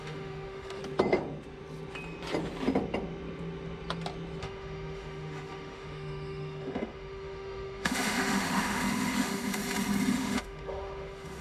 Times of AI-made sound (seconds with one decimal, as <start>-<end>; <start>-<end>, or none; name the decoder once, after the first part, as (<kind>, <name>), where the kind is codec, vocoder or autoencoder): 0.0-0.8 (autoencoder, DAC-VAE); 4.4-9.6; 10.1-11.4